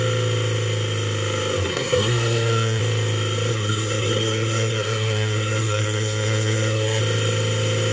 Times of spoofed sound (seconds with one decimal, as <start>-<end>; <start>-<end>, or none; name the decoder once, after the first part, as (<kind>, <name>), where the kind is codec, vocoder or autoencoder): 1.7-2.8 (codec, SNAC); 3.5-7.0